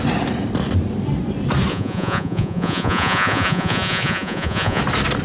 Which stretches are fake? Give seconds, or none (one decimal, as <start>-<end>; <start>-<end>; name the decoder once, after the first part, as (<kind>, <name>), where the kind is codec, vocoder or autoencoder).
1.7-4.8 (vocoder, Vocos)